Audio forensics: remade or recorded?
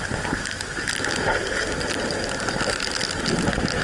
recorded